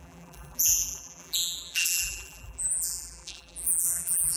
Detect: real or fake fake